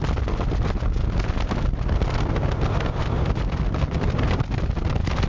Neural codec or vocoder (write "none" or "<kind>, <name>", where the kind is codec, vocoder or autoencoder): none